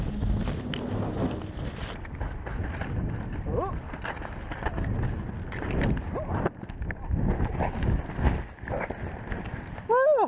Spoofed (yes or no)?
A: no